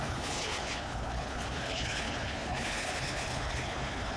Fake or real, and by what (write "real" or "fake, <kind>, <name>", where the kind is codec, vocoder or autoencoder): fake, codec, HILCodec